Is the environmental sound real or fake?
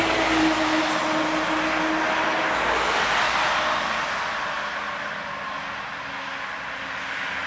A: real